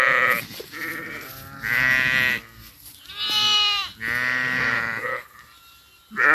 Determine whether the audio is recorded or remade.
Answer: recorded